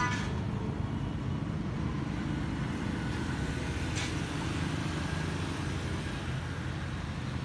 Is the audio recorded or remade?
recorded